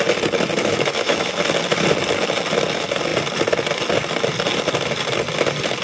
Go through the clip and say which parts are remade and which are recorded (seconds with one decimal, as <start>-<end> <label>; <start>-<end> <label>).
0.0-0.6 recorded; 0.6-1.3 remade; 1.3-5.8 recorded

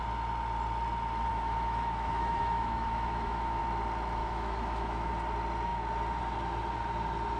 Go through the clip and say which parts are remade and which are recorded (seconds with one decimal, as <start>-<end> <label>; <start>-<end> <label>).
0.0-1.3 recorded; 1.3-3.6 remade; 3.6-4.2 recorded; 4.2-5.1 remade; 5.1-7.4 recorded

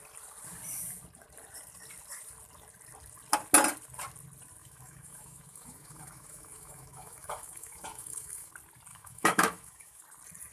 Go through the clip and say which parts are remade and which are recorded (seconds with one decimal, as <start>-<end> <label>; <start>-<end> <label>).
0.0-4.6 recorded; 4.6-8.5 remade; 8.5-8.9 recorded; 8.9-10.0 remade; 10.0-10.5 recorded

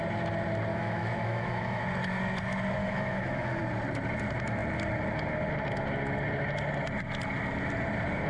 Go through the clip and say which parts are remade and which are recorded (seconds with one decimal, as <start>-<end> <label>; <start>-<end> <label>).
0.0-0.7 recorded; 0.7-1.8 remade; 1.8-2.8 recorded; 2.8-3.6 remade; 3.6-8.3 recorded

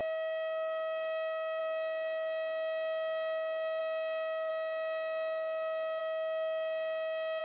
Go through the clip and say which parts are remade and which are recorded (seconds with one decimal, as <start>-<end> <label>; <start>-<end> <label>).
0.0-1.6 remade; 1.6-3.8 recorded; 3.8-4.5 remade; 4.5-6.0 recorded; 6.0-7.4 remade